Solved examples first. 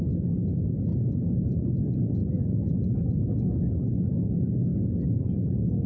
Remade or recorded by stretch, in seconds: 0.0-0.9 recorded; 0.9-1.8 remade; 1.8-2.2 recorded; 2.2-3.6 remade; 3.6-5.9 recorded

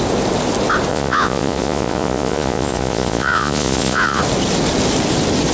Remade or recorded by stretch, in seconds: 0.0-0.9 recorded; 0.9-4.2 remade; 4.2-5.5 recorded

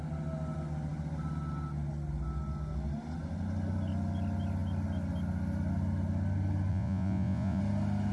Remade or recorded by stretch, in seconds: 0.0-6.7 recorded; 6.7-7.6 remade; 7.6-8.1 recorded

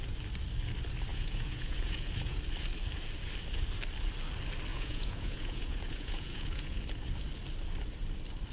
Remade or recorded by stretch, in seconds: 0.0-1.1 recorded; 1.1-2.4 remade; 2.4-4.7 recorded; 4.7-6.8 remade; 6.8-8.5 recorded

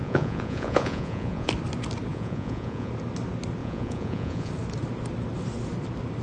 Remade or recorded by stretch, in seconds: 0.0-1.5 remade; 1.5-2.1 recorded; 2.1-2.9 remade; 2.9-3.6 recorded; 3.6-4.5 remade; 4.5-6.2 recorded

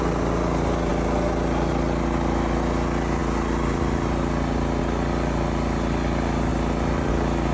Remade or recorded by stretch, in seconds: 0.0-7.5 recorded